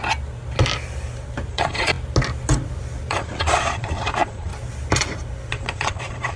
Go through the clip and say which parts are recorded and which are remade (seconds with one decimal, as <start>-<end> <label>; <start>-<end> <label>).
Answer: 0.0-1.5 recorded; 1.5-1.9 remade; 1.9-3.1 recorded; 3.1-4.5 remade; 4.5-5.5 recorded; 5.5-6.4 remade